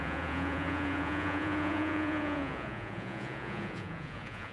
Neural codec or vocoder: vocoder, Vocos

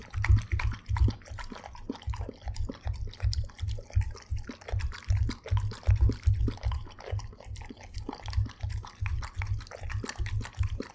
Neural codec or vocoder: none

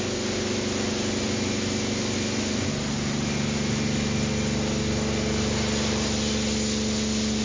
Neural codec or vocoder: none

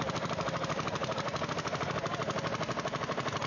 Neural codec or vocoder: none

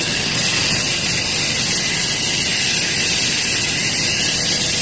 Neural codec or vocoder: none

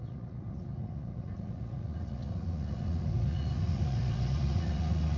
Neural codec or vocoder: vocoder, Vocos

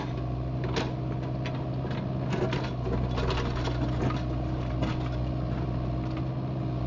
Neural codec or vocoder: none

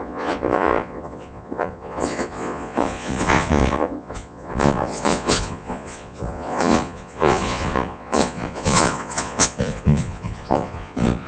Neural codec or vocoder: vocoder, Vocos